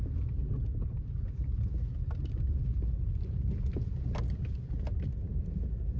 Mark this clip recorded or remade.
recorded